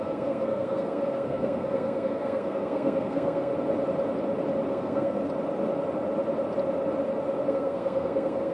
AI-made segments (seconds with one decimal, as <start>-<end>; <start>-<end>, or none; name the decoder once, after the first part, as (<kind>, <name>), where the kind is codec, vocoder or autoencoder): 0.0-3.5 (codec, SNAC); 4.7-5.2; 7.5-8.5